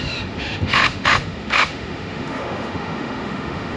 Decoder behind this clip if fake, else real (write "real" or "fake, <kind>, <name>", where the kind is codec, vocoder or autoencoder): fake, autoencoder, DAC-VAE